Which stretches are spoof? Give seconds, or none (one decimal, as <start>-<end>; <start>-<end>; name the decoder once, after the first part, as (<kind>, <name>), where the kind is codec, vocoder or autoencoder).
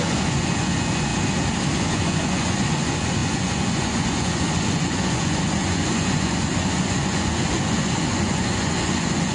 0.0-1.1 (vocoder, Vocos); 1.8-9.3